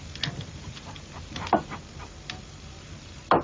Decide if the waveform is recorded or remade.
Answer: remade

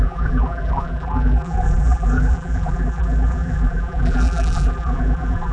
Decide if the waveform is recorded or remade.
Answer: remade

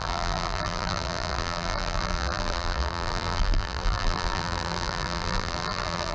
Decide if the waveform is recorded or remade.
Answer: remade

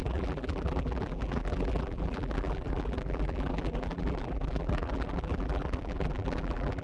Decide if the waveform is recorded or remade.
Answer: remade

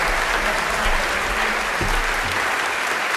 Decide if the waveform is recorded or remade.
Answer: recorded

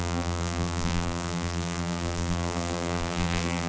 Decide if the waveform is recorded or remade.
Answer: remade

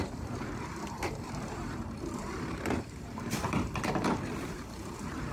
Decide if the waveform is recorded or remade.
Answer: remade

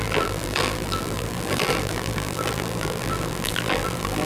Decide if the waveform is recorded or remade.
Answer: remade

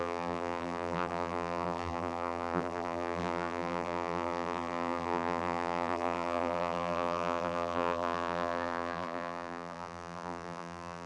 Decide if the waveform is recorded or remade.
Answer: remade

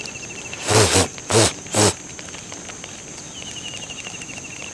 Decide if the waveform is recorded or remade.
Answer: recorded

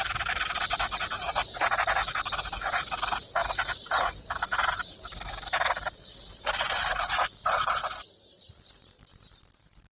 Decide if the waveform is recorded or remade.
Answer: remade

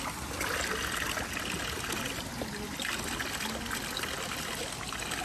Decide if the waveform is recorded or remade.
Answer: recorded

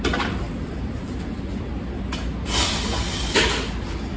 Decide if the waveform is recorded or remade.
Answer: recorded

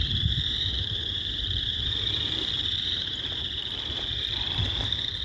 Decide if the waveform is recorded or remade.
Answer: remade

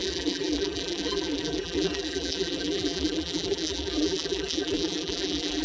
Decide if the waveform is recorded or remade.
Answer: remade